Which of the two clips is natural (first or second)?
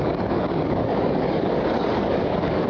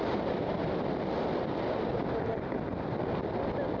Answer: second